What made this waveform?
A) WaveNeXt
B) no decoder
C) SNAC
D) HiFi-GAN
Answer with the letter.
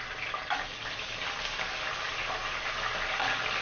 B